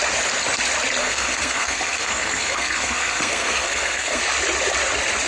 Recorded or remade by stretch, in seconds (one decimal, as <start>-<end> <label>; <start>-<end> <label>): 0.0-1.0 recorded; 1.0-4.2 remade; 4.2-5.3 recorded